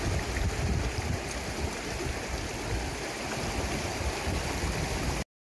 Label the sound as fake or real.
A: real